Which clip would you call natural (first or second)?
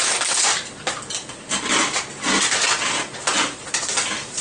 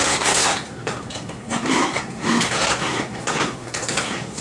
first